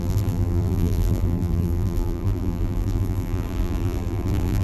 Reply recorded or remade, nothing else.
remade